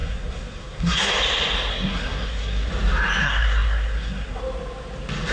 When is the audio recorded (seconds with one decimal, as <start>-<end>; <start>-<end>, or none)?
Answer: 1.1-1.7; 2.7-3.2; 4.4-5.3